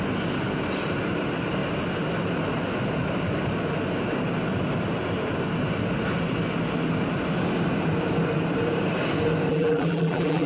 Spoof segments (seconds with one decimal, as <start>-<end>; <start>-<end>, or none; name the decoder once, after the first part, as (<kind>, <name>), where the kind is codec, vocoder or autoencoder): 9.5-10.5 (vocoder, BigVGAN v2)